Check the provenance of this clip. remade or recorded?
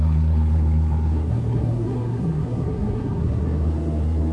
remade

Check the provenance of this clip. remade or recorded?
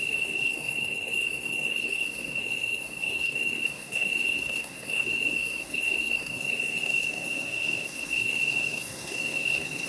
remade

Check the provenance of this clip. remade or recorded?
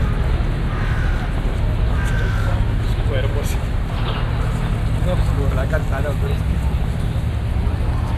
recorded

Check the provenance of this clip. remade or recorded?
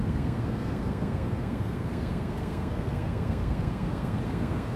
remade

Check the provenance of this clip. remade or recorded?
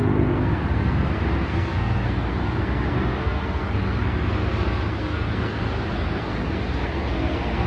remade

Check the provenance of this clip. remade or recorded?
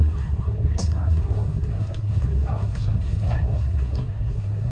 remade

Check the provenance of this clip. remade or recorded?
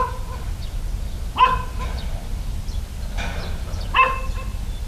recorded